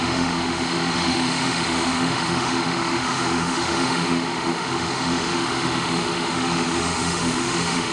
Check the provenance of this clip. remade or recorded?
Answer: remade